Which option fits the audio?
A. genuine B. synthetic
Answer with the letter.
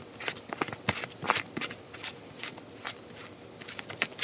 A